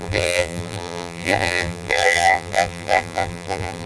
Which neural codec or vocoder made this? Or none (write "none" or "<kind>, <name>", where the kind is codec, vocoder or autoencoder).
vocoder, BigVGAN v2